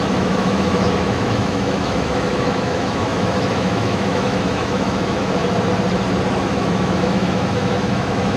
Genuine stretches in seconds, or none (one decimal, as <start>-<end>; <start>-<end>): 5.4-6.4